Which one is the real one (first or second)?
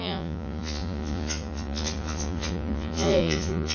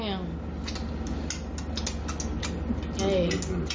second